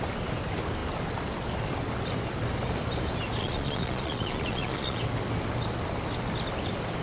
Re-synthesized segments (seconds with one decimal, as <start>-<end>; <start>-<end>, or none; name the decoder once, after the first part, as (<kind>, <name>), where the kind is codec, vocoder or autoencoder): 3.4-5.0 (vocoder, Vocos)